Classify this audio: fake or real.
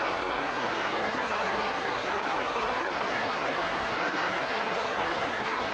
fake